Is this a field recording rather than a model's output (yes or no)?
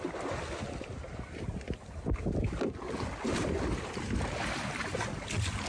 yes